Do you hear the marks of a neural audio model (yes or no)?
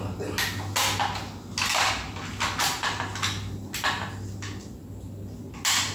no